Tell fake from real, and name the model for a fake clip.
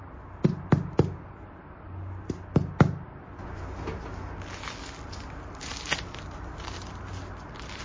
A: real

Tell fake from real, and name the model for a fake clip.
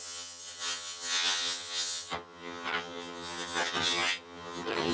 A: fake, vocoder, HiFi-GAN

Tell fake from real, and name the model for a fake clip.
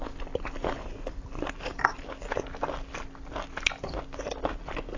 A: real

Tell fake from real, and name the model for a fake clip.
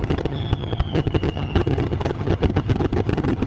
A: fake, vocoder, HiFi-GAN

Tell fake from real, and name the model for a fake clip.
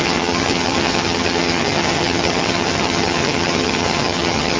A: fake, vocoder, HiFi-GAN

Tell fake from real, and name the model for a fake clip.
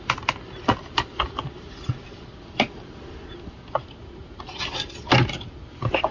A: real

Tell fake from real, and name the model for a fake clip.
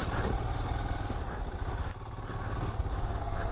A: real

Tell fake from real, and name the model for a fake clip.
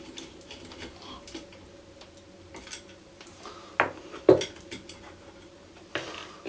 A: real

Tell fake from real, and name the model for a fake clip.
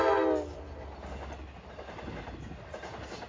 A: real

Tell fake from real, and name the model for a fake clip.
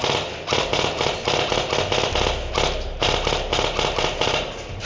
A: real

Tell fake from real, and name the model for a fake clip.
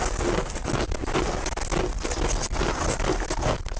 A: real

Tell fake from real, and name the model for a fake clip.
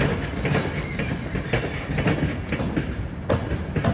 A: real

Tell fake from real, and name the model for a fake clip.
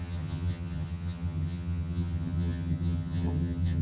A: fake, vocoder, HiFi-GAN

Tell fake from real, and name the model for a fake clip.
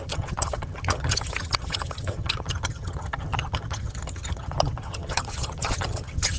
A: fake, vocoder, HiFi-GAN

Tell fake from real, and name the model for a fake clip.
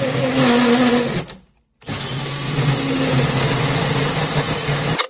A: real